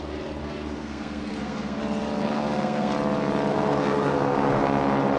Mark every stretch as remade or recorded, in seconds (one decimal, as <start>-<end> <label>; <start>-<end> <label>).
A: 0.0-0.4 recorded; 0.4-1.8 remade; 1.8-2.2 recorded; 2.2-2.9 remade; 2.9-3.5 recorded; 3.5-4.6 remade; 4.6-5.2 recorded